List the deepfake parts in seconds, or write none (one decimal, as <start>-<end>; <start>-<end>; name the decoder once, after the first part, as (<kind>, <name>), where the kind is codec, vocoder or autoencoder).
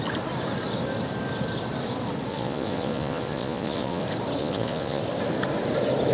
2.3-4.0 (vocoder, Vocos); 4.4-5.0